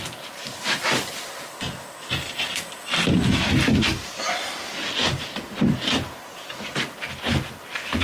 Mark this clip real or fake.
real